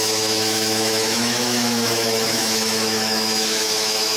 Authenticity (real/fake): fake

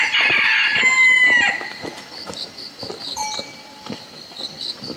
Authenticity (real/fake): real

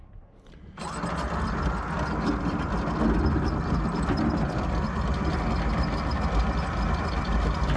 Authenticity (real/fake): real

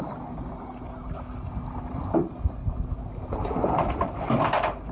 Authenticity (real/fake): real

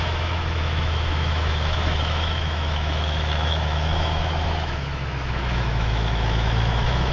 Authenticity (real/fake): fake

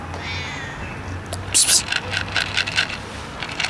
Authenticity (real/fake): real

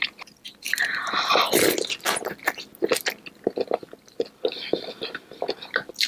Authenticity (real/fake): real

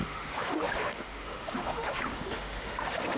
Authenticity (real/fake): fake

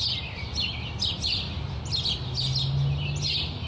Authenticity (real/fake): real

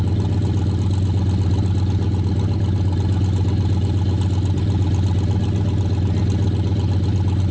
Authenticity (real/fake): real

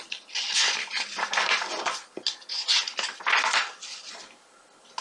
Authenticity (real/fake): real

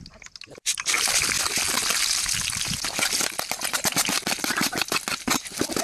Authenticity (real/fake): real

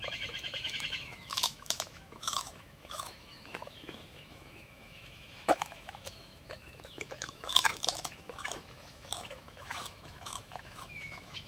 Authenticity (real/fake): fake